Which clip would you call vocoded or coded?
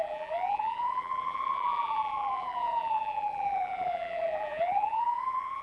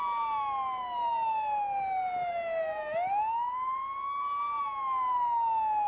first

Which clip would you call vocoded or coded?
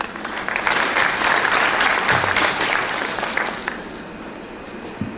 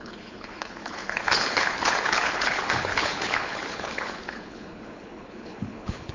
second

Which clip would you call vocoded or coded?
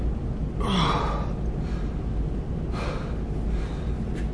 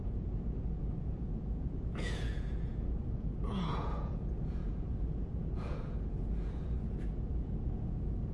second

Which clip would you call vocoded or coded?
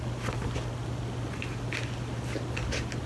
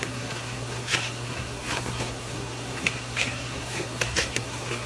second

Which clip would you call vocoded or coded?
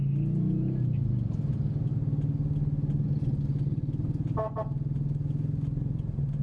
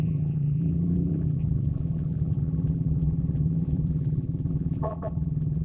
second